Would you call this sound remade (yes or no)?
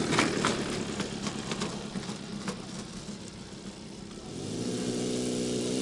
no